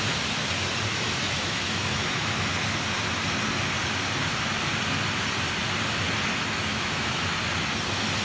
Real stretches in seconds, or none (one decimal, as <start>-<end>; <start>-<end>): 0.0-0.9; 2.5-6.4; 7.3-8.2